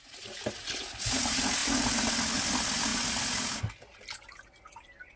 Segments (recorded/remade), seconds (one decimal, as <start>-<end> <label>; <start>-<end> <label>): 0.0-5.2 recorded